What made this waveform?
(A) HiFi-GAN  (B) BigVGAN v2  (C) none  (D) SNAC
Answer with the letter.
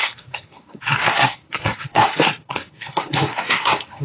D